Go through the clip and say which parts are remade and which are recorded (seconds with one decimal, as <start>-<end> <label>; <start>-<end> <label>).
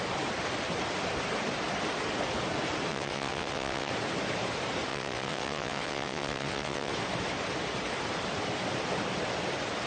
0.0-2.9 recorded; 2.9-3.9 remade; 3.9-4.9 recorded; 4.9-6.9 remade; 6.9-9.9 recorded